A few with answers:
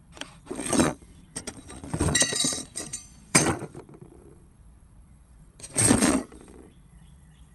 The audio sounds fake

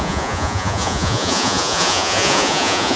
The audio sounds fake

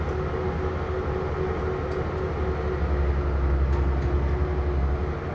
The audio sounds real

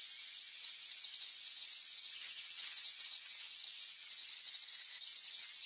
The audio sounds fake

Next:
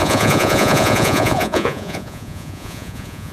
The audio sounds fake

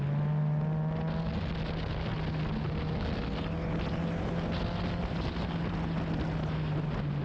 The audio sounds real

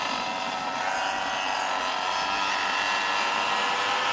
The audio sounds real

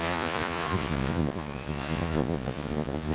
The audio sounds fake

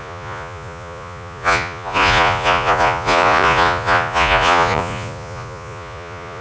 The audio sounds fake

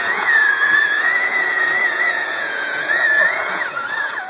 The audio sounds fake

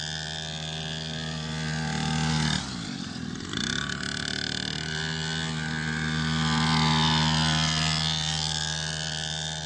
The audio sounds real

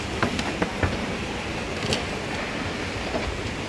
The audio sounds real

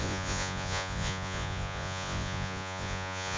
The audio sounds fake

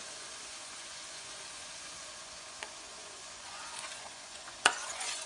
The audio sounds fake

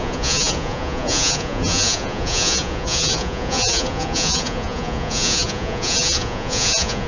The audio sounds fake